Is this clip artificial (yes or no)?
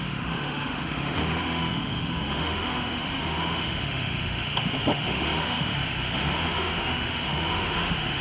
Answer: yes